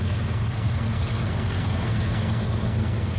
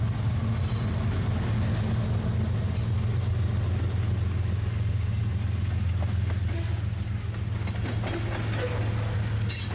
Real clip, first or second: second